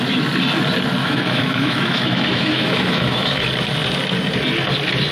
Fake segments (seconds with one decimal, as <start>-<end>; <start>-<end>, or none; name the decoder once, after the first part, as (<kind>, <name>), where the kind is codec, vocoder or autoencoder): 1.0-3.4 (autoencoder, DAC-VAE)